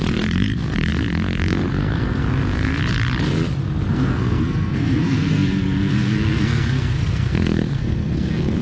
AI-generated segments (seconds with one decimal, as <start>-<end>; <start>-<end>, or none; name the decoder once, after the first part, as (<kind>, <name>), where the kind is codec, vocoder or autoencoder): 0.0-2.8 (codec, SNAC); 3.9-8.6